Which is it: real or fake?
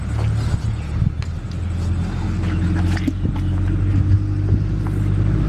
real